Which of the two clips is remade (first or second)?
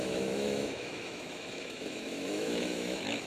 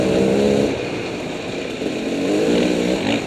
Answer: first